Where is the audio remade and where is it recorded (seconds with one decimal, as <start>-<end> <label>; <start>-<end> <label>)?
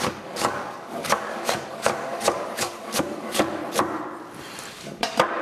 0.0-3.6 remade; 3.6-4.7 recorded; 4.7-5.4 remade